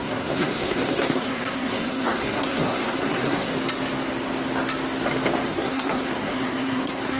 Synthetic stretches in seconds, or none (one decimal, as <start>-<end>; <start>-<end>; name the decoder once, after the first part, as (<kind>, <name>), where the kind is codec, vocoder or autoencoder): 0.0-3.5 (codec, SNAC); 5.5-7.2